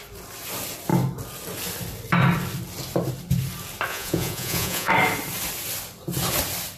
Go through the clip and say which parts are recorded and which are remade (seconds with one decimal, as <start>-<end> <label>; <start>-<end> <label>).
0.0-3.9 recorded; 3.9-4.9 remade; 4.9-6.8 recorded